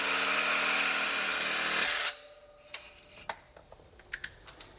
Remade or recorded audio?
recorded